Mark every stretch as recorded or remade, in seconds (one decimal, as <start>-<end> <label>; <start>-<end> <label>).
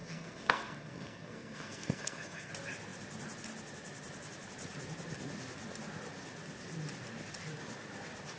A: 0.0-2.5 remade; 2.5-8.4 recorded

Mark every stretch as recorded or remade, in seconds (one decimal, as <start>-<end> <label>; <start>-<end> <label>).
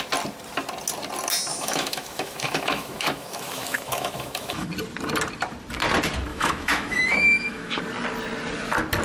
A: 0.0-1.5 recorded; 1.5-4.7 remade; 4.7-6.3 recorded; 6.3-7.8 remade; 7.8-9.0 recorded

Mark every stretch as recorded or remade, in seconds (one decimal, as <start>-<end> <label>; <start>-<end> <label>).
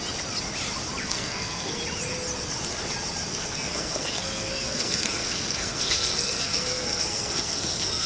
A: 0.0-1.0 recorded; 1.0-1.8 remade; 1.8-3.3 recorded; 3.3-8.1 remade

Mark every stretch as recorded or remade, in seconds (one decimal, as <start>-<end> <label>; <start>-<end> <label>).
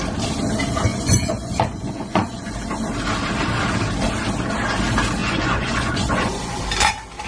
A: 0.0-0.9 recorded; 0.9-2.5 remade; 2.5-5.2 recorded; 5.2-6.6 remade; 6.6-7.3 recorded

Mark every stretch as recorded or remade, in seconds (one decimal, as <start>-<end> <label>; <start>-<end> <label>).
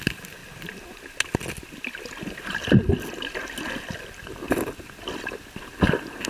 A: 0.0-6.3 recorded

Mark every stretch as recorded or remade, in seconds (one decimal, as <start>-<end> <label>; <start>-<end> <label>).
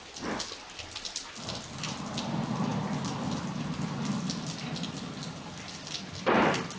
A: 0.0-6.8 recorded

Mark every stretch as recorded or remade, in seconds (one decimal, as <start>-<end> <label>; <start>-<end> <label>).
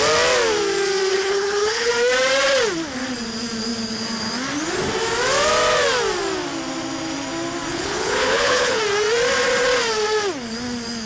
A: 0.0-1.1 recorded; 1.1-1.9 remade; 1.9-7.7 recorded; 7.7-8.8 remade; 8.8-11.1 recorded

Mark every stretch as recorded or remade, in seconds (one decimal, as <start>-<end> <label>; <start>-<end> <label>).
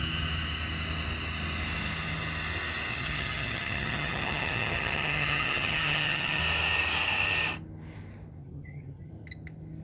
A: 0.0-2.9 recorded; 2.9-6.4 remade; 6.4-8.4 recorded; 8.4-9.1 remade; 9.1-9.8 recorded